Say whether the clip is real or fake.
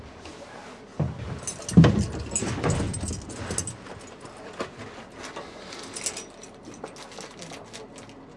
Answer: real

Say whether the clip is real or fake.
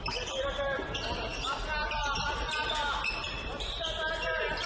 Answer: real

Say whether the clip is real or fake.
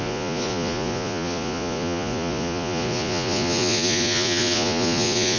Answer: fake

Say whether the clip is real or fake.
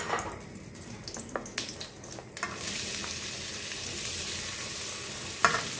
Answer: real